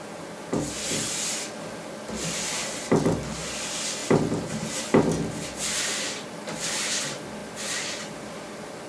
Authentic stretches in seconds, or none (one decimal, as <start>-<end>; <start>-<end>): 0.0-8.9